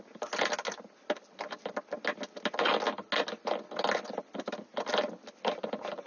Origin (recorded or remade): recorded